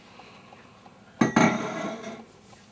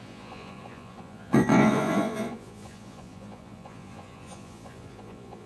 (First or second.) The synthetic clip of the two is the second